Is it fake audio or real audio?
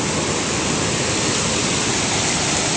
real